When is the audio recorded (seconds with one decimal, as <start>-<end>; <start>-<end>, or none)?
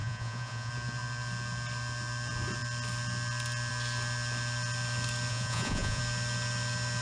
0.7-5.3; 6.0-7.0